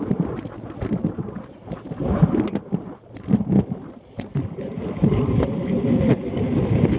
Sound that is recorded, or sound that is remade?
recorded